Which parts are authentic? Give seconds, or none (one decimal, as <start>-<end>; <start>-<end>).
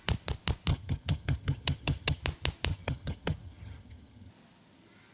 0.0-0.7; 2.2-2.7; 4.3-5.1